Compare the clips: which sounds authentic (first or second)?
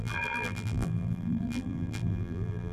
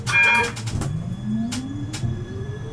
second